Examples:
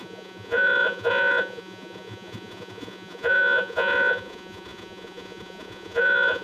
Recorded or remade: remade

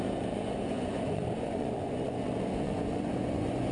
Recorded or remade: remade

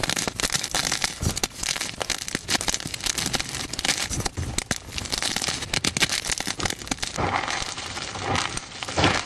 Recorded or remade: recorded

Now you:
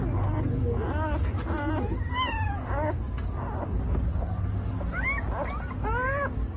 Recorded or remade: recorded